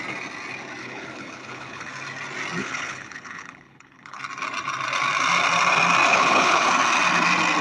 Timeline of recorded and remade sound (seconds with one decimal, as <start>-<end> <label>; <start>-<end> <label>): 0.0-0.8 recorded; 0.8-1.9 remade; 1.9-2.6 recorded; 2.6-4.2 remade; 4.2-6.1 recorded; 6.1-6.7 remade; 6.7-7.6 recorded

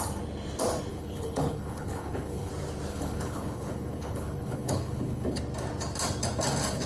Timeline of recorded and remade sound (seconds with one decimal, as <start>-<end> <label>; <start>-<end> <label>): 0.0-0.9 recorded; 0.9-2.5 remade; 2.5-2.9 recorded; 2.9-5.4 remade; 5.4-6.9 recorded

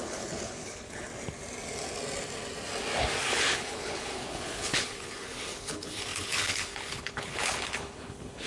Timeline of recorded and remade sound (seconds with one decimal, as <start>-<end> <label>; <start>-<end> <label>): 0.0-1.1 remade; 1.1-3.2 recorded; 3.2-8.5 remade